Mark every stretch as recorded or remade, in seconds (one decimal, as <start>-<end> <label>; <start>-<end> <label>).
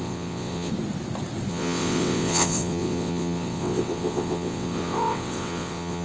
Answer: 0.0-0.7 remade; 0.7-1.5 recorded; 1.5-6.0 remade